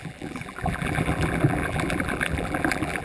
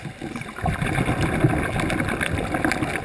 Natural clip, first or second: second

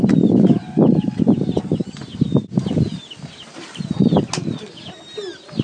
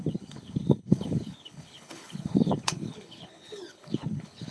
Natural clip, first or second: first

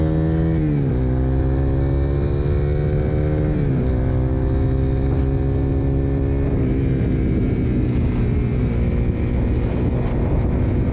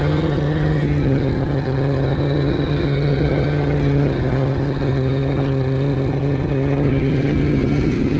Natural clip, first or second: first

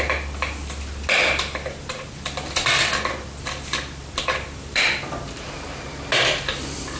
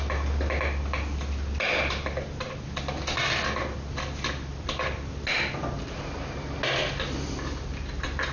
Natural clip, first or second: second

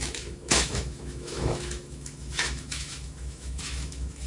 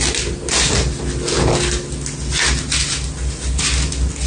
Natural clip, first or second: second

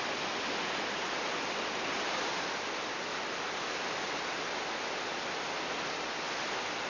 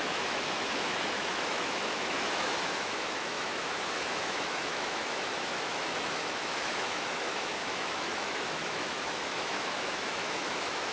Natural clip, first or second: first